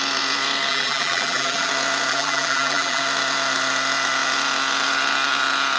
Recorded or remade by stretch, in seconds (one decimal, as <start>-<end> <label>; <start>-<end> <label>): 0.0-0.7 recorded; 0.7-1.7 remade; 1.7-2.1 recorded; 2.1-3.0 remade; 3.0-5.8 recorded